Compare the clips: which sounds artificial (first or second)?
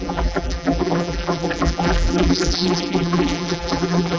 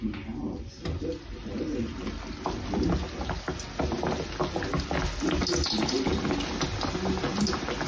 first